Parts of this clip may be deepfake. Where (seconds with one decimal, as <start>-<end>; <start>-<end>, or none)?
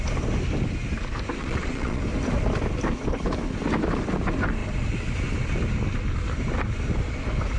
1.4-2.0